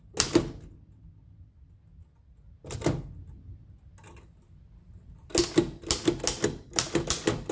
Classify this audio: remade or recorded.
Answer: recorded